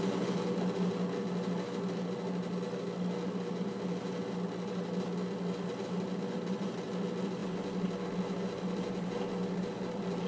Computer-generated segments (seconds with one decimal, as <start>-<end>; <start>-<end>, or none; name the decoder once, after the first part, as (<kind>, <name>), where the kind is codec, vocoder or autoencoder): none